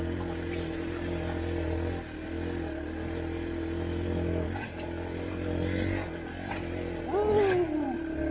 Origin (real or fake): real